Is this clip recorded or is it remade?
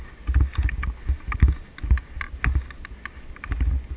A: recorded